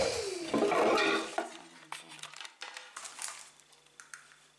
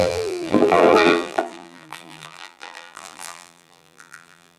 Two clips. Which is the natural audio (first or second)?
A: first